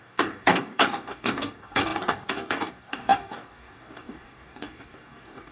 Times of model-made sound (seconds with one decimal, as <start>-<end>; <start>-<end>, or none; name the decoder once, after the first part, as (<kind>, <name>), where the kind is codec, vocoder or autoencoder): 0.0-5.5 (codec, DAC)